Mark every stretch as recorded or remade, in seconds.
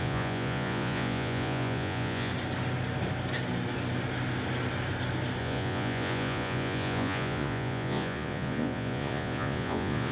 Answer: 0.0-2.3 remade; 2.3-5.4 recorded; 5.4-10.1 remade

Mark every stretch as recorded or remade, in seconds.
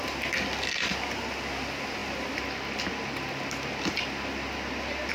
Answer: 0.0-5.1 recorded